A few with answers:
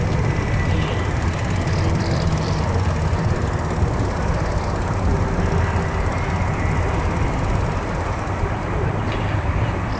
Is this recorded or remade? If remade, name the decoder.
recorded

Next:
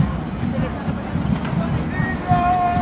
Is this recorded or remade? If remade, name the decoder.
recorded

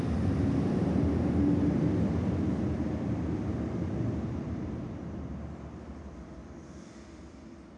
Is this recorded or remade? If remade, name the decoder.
recorded